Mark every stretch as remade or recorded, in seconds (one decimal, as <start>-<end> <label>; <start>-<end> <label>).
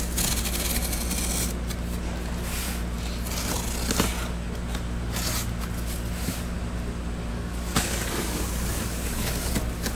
0.0-7.3 recorded; 7.3-9.5 remade; 9.5-10.0 recorded